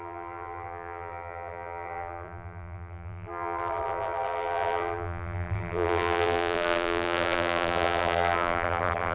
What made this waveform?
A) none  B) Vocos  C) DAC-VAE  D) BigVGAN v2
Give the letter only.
D